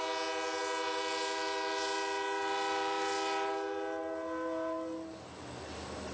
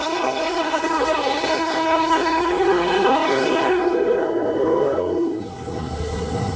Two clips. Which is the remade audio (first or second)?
second